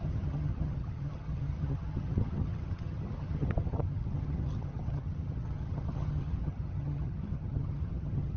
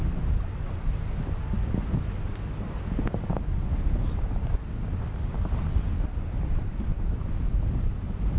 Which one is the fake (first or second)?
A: first